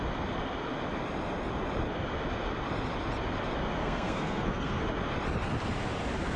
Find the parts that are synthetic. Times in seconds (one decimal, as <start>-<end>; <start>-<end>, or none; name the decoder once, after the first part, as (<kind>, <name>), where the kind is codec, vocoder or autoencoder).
3.8-4.8 (codec, SNAC)